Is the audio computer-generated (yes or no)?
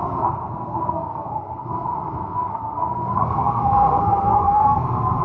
yes